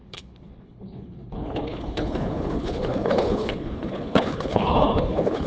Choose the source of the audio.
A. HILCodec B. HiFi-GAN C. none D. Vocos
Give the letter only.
A